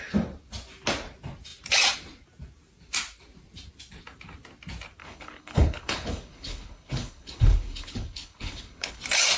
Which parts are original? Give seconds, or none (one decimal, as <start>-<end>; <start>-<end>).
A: 0.0-5.0; 9.0-9.4